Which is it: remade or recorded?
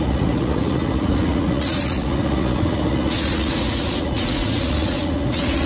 remade